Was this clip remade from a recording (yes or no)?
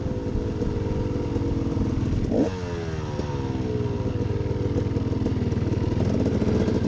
no